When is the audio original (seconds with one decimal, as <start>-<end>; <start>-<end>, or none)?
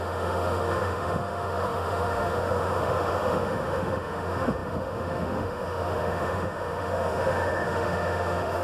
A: none